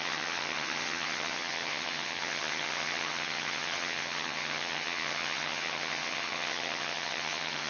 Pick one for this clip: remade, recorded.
remade